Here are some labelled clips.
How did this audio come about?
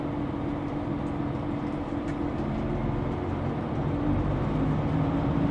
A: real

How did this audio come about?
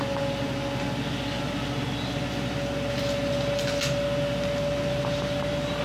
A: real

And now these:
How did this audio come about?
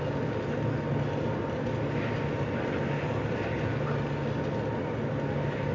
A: real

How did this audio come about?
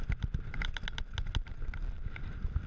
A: real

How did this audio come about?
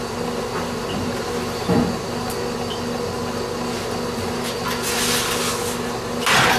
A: real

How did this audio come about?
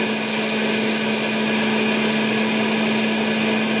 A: real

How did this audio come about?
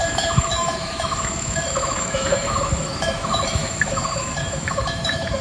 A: fake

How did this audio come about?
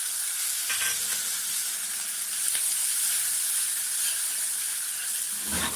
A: real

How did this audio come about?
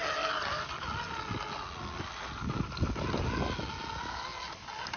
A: real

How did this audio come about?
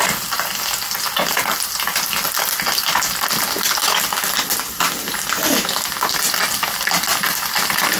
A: real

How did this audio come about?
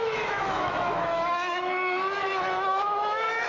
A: fake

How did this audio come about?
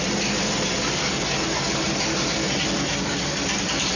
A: real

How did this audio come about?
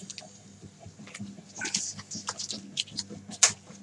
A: real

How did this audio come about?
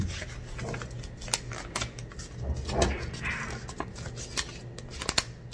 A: real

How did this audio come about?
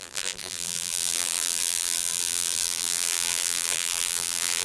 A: fake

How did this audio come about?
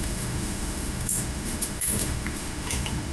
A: fake